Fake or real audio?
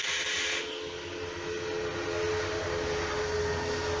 real